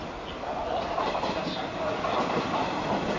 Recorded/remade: recorded